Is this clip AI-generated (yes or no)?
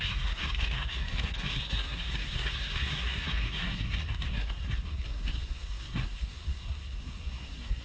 yes